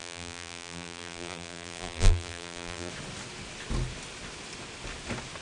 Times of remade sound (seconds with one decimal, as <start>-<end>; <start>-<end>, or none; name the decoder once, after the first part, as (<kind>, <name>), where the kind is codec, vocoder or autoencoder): 0.0-2.9 (vocoder, BigVGAN v2)